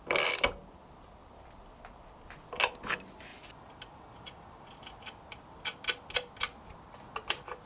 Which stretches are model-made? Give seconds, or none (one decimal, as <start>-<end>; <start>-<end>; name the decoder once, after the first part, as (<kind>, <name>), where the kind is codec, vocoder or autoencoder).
none